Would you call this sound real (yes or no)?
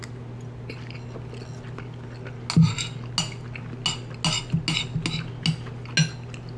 yes